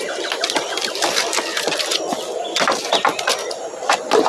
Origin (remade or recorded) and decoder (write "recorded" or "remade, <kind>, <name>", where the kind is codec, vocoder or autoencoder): recorded